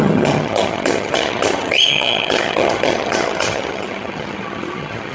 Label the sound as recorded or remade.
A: remade